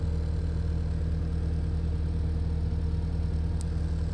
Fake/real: real